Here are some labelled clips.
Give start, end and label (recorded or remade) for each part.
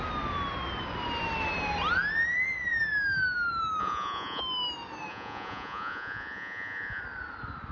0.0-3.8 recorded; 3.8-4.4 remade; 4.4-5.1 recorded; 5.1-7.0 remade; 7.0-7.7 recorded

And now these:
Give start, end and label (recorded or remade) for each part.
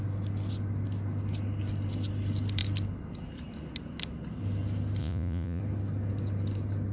0.0-5.0 recorded; 5.0-5.6 remade; 5.6-6.9 recorded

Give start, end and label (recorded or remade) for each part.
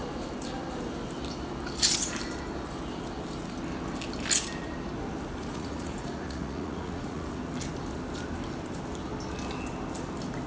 0.0-5.4 recorded; 5.4-7.4 remade; 7.4-10.5 recorded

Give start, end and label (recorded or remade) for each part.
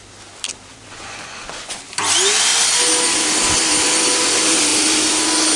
0.0-0.7 recorded; 0.7-1.8 remade; 1.8-5.6 recorded